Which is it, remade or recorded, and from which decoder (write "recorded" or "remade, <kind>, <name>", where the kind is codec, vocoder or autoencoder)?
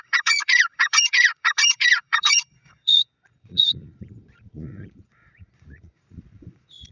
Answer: remade, vocoder, Vocos